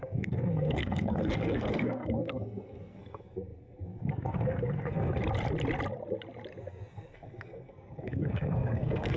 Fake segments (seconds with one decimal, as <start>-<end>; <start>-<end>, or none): 0.0-5.1; 6.6-9.2